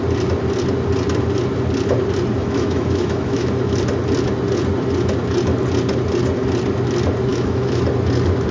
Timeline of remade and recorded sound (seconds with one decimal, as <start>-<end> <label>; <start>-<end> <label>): 0.0-2.4 recorded; 2.4-3.8 remade; 3.8-7.3 recorded; 7.3-7.8 remade; 7.8-8.5 recorded